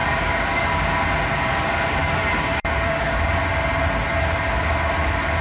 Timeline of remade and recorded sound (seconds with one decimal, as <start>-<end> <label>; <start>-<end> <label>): 0.0-0.6 remade; 0.6-2.0 recorded; 2.0-3.2 remade; 3.2-5.4 recorded